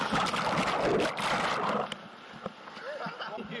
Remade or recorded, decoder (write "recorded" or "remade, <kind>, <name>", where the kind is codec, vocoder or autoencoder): recorded